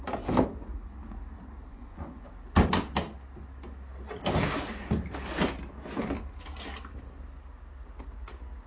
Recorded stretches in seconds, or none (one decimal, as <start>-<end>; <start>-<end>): 0.0-1.7; 2.3-8.7